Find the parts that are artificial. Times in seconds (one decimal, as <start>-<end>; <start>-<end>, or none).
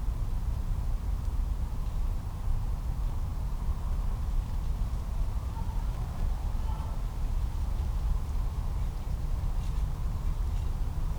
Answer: none